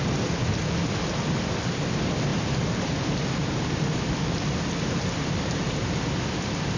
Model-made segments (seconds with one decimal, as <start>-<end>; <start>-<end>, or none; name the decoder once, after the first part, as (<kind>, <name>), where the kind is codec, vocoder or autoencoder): none